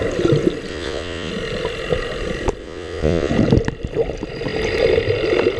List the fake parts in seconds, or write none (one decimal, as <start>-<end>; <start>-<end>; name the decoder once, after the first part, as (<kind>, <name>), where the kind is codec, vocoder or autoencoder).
0.7-1.3 (vocoder, Vocos); 2.6-3.3